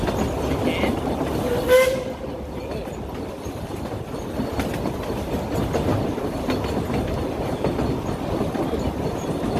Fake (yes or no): no